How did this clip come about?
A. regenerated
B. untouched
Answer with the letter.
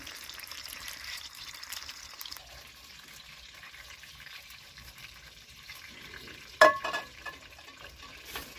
A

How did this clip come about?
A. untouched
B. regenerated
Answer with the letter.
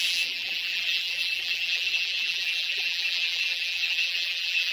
B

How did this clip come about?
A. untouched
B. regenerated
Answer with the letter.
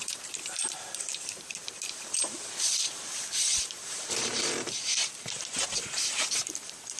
B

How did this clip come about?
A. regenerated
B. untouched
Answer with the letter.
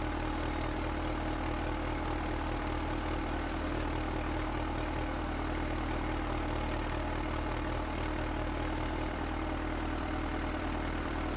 A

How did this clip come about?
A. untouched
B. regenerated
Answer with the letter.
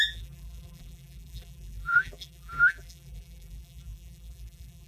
B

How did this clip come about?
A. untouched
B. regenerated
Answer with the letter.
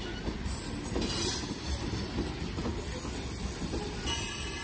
A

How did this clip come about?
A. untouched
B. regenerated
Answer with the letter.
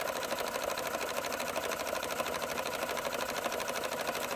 A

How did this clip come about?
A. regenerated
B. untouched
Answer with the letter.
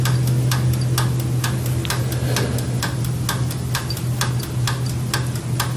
B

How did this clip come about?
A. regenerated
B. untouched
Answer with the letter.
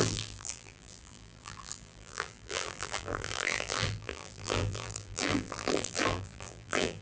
A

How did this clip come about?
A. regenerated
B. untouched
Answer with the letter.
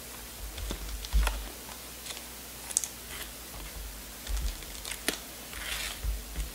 B